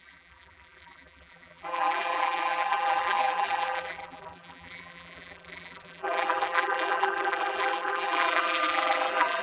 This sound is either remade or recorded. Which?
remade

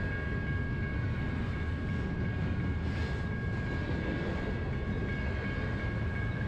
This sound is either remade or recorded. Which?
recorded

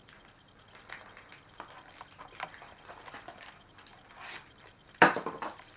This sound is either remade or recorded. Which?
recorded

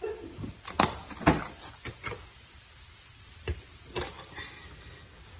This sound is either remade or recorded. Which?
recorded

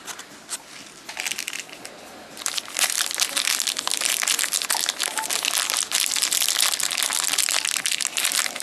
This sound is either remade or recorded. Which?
recorded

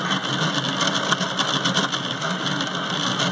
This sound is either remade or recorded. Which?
recorded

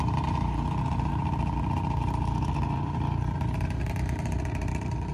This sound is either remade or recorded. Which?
remade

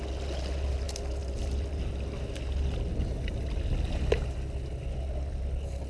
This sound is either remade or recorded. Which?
recorded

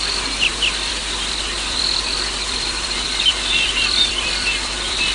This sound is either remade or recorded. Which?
remade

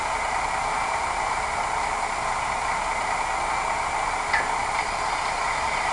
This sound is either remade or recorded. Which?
recorded